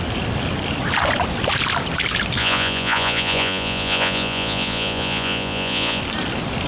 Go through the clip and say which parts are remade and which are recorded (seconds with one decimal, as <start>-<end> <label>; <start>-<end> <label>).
0.0-2.4 recorded; 2.4-6.0 remade; 6.0-6.7 recorded